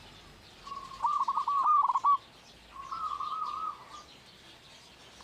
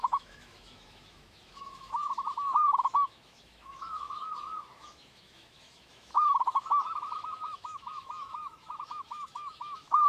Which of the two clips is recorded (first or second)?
first